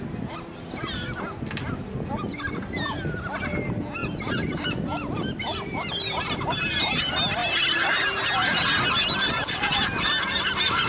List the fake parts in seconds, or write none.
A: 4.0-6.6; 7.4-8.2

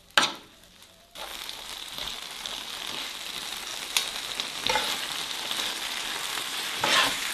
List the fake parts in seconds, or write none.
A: 6.3-7.3

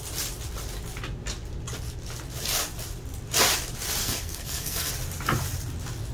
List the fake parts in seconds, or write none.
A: 4.0-4.9

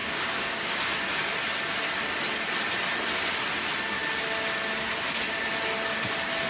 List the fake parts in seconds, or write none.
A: 0.0-0.8

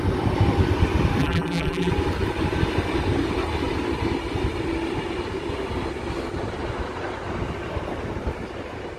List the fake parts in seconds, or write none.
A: 1.2-1.9

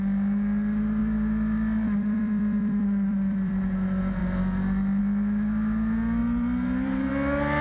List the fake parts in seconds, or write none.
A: 1.0-3.5; 6.2-7.1

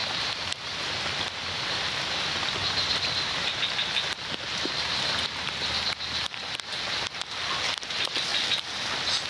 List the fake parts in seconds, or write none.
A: 0.0-0.8; 2.6-4.8; 8.3-9.3

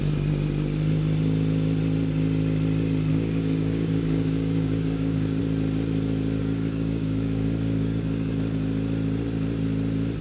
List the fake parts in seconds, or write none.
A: 3.1-5.4; 6.4-8.3